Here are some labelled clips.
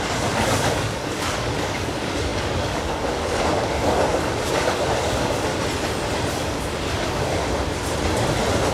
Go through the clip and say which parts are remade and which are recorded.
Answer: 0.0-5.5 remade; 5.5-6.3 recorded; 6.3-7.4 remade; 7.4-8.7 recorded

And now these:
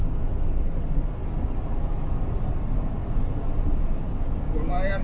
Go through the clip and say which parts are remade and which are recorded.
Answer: 0.0-5.0 recorded

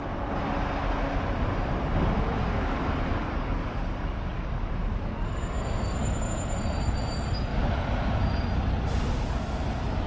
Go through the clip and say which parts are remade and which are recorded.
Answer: 0.0-3.1 recorded; 3.1-4.7 remade; 4.7-10.1 recorded

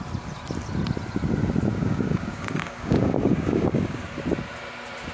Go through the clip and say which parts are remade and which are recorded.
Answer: 0.0-1.7 recorded; 1.7-4.0 remade; 4.0-5.1 recorded